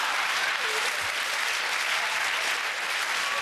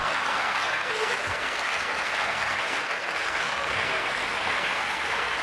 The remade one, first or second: second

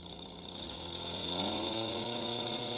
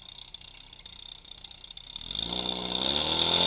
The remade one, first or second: first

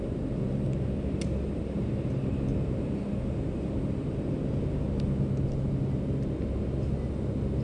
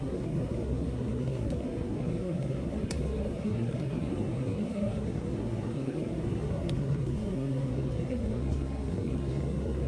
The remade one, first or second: second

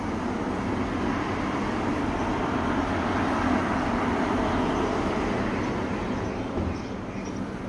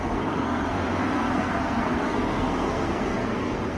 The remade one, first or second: second